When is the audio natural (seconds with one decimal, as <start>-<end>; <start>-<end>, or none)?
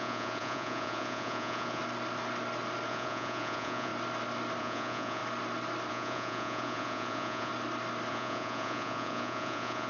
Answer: 1.8-2.9; 3.9-4.6; 5.2-5.9; 7.5-8.1